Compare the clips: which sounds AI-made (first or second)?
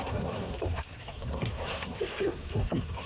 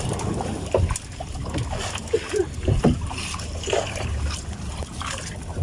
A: first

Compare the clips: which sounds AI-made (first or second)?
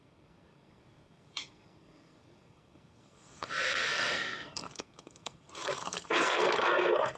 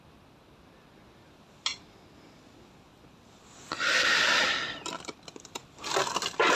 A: first